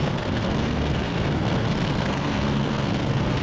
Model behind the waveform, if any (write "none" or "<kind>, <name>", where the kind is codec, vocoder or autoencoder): codec, SNAC